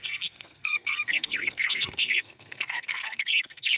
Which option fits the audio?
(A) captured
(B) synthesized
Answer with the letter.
B